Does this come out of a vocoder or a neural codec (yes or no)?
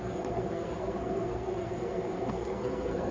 yes